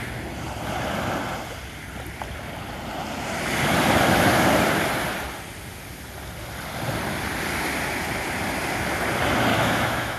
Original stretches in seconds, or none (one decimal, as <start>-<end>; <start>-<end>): 0.0-9.5